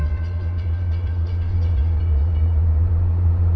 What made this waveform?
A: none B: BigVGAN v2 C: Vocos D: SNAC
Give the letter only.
C